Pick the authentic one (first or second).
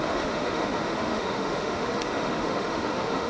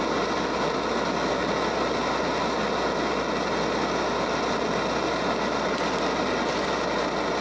second